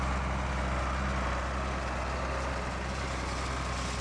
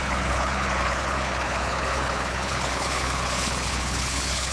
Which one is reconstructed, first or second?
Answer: second